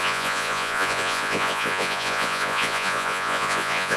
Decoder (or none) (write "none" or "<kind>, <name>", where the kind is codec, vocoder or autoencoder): vocoder, Vocos